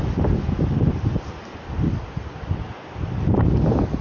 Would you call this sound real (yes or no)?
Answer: yes